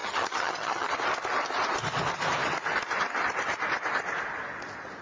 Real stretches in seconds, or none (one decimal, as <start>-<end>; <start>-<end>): 0.9-5.0